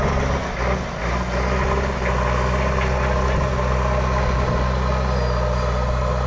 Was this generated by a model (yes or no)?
no